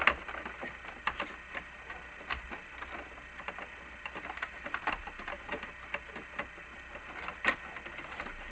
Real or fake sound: real